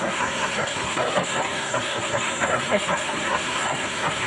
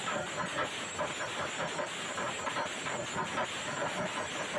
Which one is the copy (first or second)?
first